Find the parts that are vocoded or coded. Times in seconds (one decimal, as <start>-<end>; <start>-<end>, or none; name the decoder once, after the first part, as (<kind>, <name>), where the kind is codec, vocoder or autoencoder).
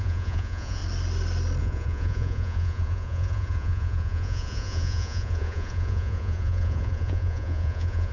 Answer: 0.0-0.8 (vocoder, Vocos); 1.6-8.1